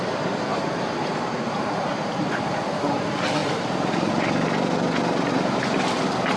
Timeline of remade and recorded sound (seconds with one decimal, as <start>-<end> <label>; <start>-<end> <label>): 0.0-0.5 recorded; 0.5-2.5 remade; 2.5-6.4 recorded